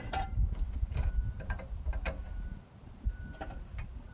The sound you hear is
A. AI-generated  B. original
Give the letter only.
A